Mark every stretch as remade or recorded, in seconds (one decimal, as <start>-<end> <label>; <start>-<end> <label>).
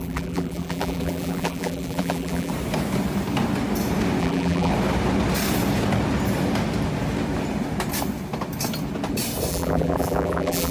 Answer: 0.0-2.5 remade; 2.5-4.2 recorded; 4.2-4.7 remade; 4.7-9.5 recorded; 9.5-10.7 remade